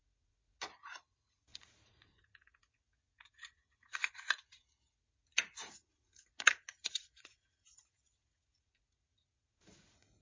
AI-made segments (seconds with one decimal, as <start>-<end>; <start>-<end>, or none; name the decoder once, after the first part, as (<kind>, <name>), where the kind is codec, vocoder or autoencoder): 0.0-10.2 (vocoder, Vocos)